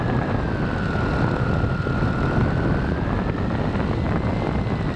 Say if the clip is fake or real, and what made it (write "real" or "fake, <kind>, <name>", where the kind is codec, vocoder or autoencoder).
real